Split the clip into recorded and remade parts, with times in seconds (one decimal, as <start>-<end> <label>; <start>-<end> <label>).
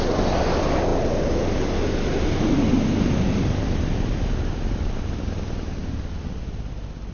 0.0-7.1 recorded